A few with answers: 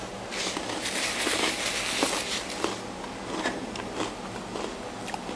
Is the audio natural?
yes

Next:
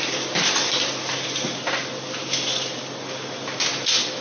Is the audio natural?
yes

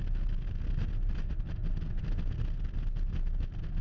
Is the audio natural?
yes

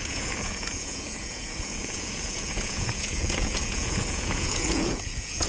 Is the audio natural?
no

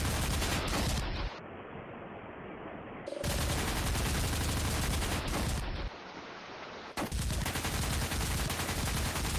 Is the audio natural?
yes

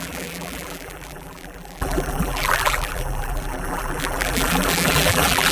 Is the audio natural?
no